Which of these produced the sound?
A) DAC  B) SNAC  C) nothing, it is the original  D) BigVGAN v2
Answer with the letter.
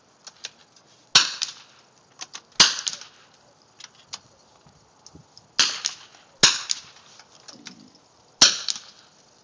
C